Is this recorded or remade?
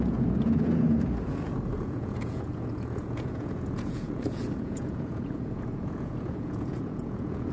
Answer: remade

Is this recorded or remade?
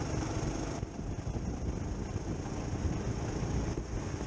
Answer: recorded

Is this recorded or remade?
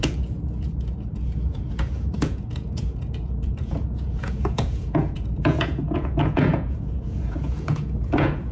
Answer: remade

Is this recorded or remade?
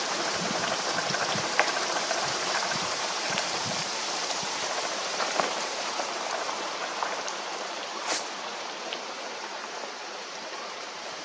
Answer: remade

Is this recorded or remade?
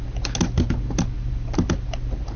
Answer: recorded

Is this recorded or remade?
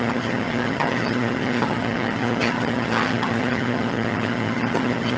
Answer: remade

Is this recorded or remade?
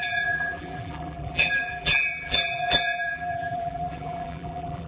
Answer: remade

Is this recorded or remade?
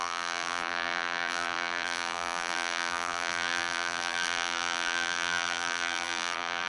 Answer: remade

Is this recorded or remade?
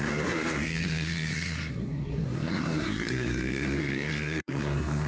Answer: remade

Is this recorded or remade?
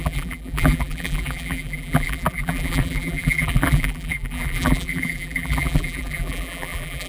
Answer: remade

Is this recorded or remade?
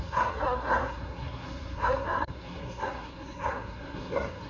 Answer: remade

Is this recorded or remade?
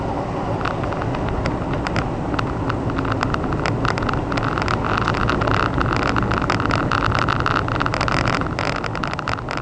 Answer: recorded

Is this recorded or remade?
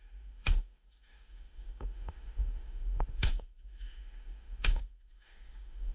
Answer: remade